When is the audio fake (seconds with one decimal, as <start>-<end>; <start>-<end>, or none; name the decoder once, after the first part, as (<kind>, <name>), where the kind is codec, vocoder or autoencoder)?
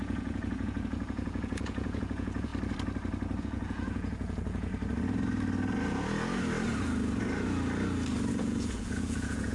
0.0-2.5 (vocoder, Vocos); 3.4-4.7; 8.3-9.5